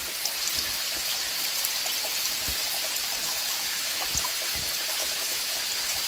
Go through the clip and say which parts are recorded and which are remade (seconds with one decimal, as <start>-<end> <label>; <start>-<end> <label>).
0.0-3.2 recorded; 3.2-4.0 remade; 4.0-5.0 recorded; 5.0-5.5 remade; 5.5-6.1 recorded